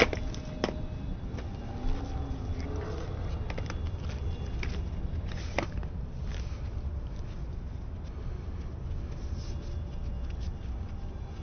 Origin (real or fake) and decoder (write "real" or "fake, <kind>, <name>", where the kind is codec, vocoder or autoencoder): real